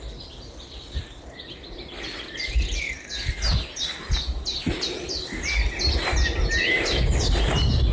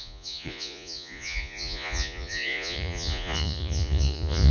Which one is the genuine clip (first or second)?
first